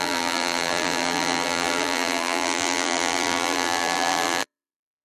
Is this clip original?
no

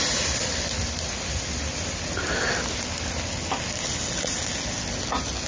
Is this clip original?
yes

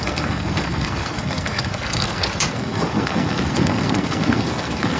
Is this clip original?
no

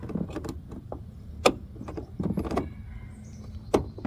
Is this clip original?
yes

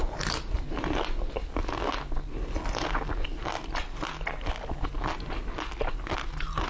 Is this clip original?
yes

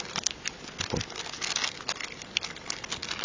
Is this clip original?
yes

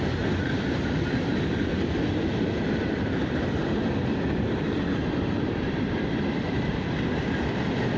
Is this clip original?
no